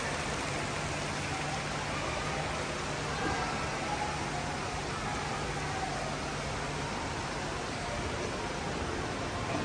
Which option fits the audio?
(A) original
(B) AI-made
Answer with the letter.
A